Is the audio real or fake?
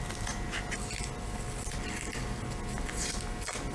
real